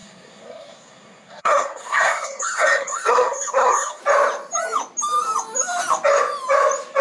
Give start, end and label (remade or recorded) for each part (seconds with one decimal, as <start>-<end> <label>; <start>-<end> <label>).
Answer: 0.0-4.0 remade; 4.0-7.0 recorded